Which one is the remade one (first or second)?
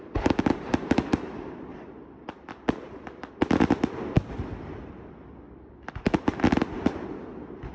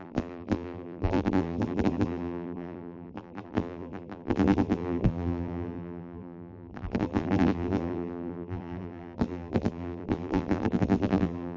second